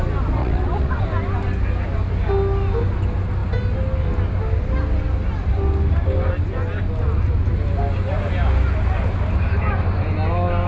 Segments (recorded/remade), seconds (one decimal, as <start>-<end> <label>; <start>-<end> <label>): 0.0-0.4 recorded; 0.4-1.0 remade; 1.0-10.7 recorded